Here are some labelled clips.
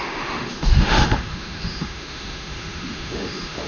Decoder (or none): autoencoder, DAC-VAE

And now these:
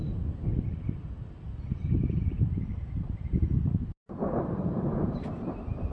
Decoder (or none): vocoder, BigVGAN v2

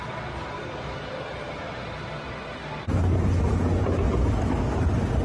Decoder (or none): none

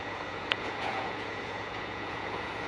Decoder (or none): vocoder, Vocos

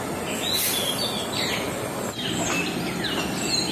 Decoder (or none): none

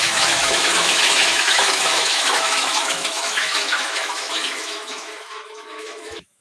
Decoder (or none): autoencoder, DAC-VAE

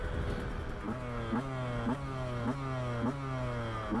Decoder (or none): none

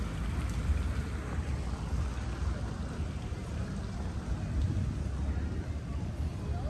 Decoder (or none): none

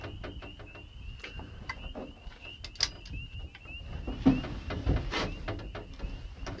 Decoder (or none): none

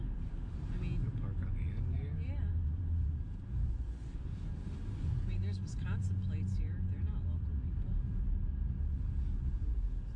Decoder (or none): none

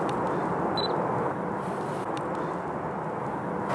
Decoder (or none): none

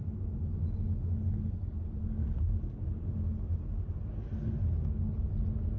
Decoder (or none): none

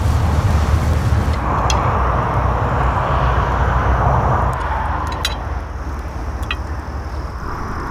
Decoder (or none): none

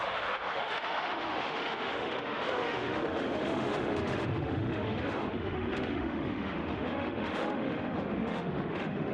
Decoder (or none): autoencoder, DAC-VAE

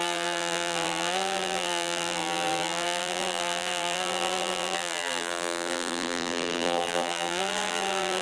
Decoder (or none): vocoder, BigVGAN v2